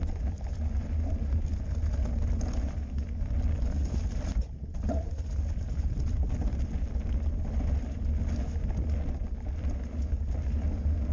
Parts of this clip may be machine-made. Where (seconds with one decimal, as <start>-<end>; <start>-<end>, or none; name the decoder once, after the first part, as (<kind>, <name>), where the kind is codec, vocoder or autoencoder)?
none